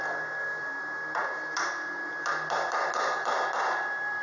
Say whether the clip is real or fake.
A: real